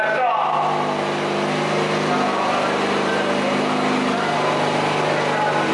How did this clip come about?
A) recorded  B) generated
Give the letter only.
A